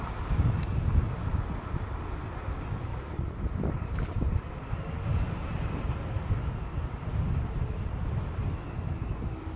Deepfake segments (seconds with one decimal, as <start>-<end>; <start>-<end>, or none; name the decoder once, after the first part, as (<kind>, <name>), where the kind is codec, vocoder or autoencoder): 2.9-4.5 (vocoder, BigVGAN v2)